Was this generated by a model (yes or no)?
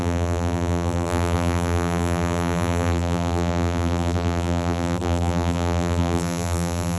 yes